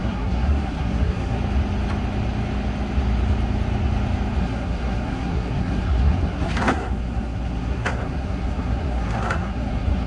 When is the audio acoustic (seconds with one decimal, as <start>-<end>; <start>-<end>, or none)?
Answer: 1.4-4.4

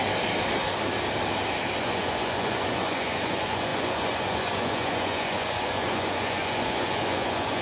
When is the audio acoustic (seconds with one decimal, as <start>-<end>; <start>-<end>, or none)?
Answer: 0.0-1.8